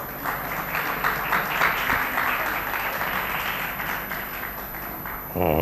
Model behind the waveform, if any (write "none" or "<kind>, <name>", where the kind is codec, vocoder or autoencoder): none